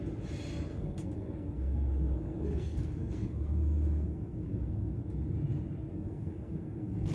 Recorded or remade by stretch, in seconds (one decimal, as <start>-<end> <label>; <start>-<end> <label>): 0.0-0.7 recorded; 0.7-5.0 remade; 5.0-5.9 recorded; 5.9-7.1 remade